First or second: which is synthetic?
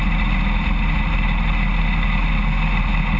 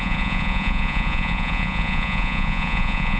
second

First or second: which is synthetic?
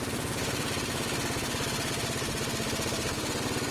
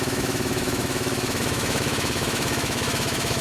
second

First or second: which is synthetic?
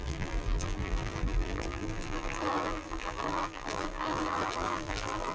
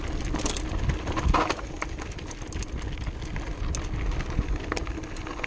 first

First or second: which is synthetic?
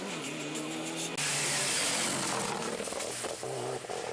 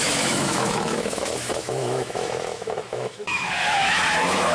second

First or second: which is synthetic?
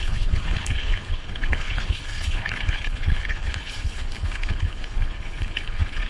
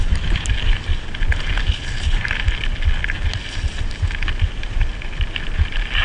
first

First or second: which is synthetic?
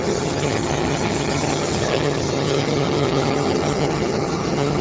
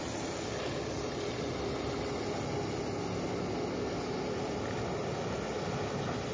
first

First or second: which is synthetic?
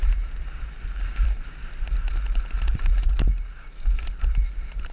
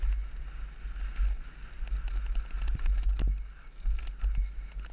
first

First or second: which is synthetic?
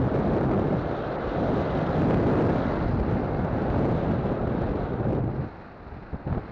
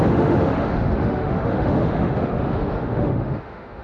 second